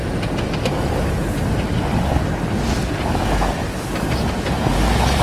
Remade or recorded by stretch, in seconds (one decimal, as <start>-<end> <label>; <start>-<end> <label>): 0.0-5.2 recorded